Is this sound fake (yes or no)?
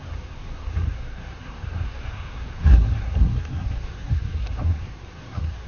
yes